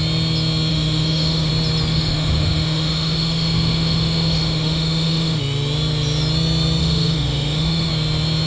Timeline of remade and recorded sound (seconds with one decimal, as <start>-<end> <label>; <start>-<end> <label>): 0.0-0.7 recorded; 0.7-1.5 remade; 1.5-1.9 recorded; 1.9-5.4 remade; 5.4-6.8 recorded; 6.8-7.9 remade; 7.9-8.5 recorded

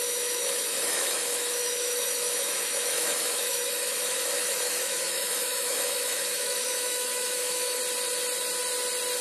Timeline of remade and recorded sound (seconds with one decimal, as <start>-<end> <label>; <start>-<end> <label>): 0.0-7.8 remade; 7.8-9.2 recorded

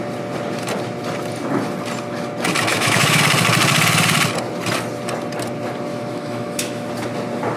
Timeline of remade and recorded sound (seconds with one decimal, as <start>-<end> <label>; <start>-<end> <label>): 0.0-2.7 recorded; 2.7-3.2 remade; 3.2-5.9 recorded; 5.9-6.9 remade; 6.9-7.6 recorded

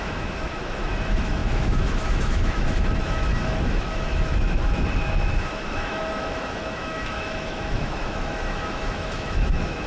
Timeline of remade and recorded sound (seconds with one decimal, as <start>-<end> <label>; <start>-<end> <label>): 0.0-9.9 remade

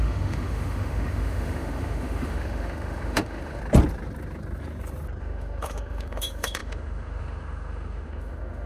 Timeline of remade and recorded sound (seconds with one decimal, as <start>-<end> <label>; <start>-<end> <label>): 0.0-3.6 remade; 3.6-5.2 recorded; 5.2-8.7 remade

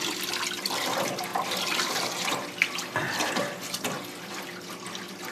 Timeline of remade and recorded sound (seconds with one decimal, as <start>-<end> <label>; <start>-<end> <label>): 0.0-5.3 recorded

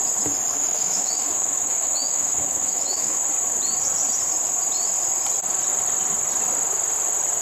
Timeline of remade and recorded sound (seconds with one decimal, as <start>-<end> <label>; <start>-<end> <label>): 0.0-0.5 recorded; 0.5-3.2 remade; 3.2-7.4 recorded